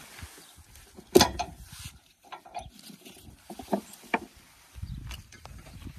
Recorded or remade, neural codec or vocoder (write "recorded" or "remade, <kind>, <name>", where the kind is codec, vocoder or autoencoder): remade, vocoder, BigVGAN v2